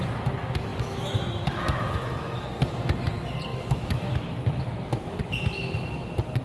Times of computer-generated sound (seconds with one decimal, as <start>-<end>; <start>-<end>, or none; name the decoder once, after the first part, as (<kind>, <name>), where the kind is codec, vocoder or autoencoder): 0.7-2.5 (autoencoder, DAC-VAE); 3.5-5.2